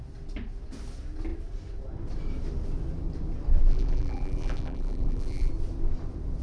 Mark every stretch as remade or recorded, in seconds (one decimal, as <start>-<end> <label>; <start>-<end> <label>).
0.0-3.7 recorded; 3.7-5.5 remade; 5.5-6.4 recorded